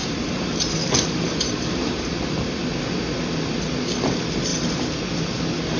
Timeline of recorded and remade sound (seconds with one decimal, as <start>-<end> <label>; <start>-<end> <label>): 0.0-2.1 remade; 2.1-5.8 recorded